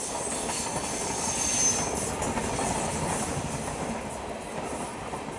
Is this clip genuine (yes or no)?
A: yes